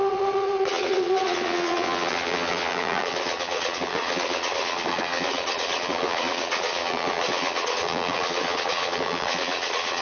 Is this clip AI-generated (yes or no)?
yes